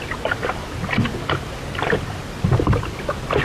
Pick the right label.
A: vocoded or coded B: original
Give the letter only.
B